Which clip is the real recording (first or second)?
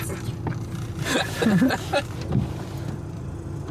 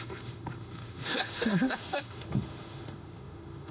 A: first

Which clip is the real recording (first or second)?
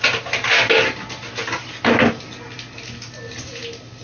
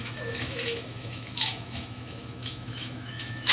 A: first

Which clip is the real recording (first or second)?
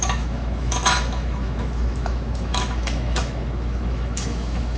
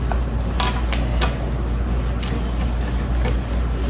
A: second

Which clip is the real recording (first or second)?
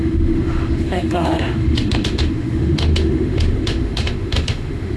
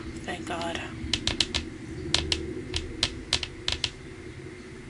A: second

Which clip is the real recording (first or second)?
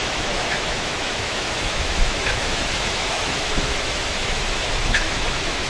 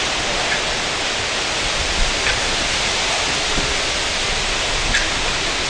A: second